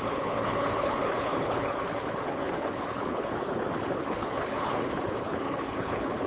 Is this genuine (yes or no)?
no